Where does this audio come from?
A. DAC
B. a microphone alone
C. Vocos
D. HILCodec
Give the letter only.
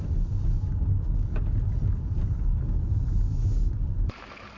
B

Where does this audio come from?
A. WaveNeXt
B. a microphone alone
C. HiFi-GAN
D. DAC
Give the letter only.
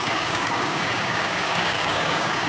D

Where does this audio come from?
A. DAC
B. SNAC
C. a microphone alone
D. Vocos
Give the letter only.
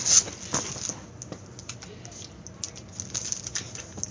C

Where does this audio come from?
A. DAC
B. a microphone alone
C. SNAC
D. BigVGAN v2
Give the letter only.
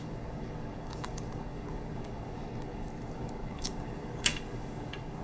A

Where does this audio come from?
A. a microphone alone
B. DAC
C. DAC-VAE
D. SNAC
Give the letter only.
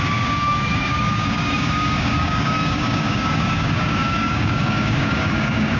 B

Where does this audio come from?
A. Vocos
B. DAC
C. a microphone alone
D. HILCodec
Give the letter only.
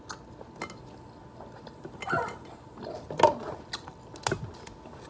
C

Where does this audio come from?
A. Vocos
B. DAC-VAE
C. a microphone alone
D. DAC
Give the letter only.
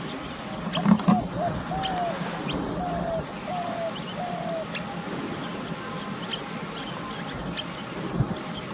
C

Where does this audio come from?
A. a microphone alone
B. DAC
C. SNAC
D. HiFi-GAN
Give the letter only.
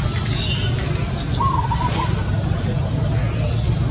A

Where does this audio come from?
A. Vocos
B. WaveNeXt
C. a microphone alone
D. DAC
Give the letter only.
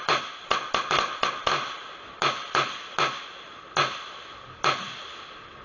C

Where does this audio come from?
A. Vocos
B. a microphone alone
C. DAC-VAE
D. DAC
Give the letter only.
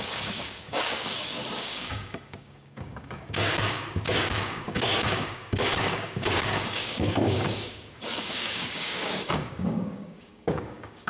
D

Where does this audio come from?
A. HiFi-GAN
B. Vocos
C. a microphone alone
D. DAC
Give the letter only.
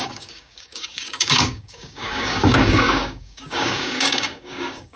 D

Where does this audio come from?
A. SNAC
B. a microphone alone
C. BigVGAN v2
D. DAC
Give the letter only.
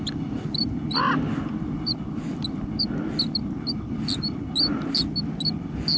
B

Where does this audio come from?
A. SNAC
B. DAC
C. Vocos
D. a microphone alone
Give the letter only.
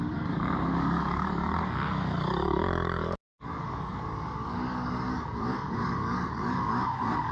B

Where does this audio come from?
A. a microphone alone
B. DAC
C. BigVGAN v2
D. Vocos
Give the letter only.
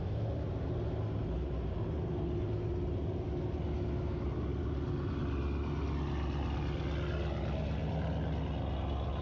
A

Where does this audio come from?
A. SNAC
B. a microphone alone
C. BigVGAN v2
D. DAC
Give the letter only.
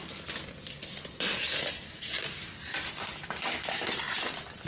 B